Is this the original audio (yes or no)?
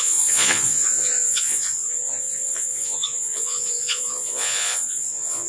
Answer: no